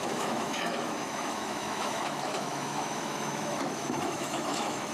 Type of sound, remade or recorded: remade